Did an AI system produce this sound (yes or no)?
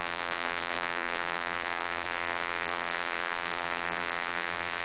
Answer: yes